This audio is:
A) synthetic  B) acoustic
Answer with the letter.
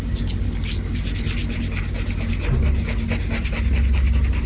B